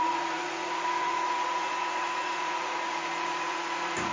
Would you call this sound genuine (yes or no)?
no